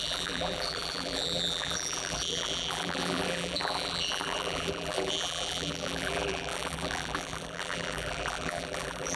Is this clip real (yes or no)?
no